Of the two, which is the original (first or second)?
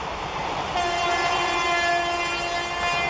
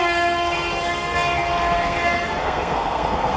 first